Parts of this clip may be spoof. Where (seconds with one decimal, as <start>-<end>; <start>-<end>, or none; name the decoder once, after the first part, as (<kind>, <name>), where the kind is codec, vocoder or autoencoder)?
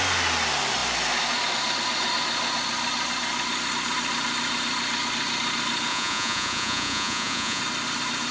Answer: 5.9-7.6 (vocoder, Vocos)